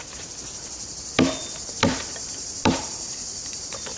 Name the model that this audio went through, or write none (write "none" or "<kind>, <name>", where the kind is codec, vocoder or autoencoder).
vocoder, BigVGAN v2